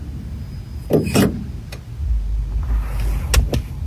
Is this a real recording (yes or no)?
yes